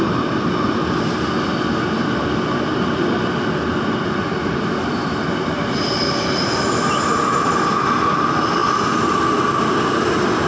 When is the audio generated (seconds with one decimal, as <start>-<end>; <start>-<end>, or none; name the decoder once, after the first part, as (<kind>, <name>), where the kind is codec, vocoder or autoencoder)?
none